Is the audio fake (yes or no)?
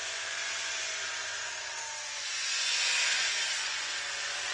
yes